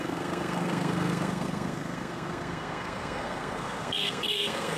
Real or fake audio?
fake